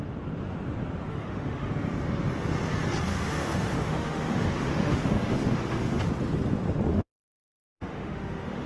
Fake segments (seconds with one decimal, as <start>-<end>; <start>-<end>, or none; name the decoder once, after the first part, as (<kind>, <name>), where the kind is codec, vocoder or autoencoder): 1.1-1.7 (autoencoder, DAC-VAE); 3.1-6.1; 6.9-8.7